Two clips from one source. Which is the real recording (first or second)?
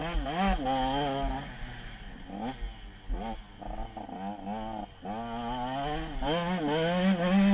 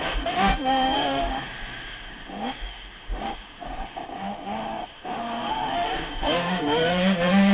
first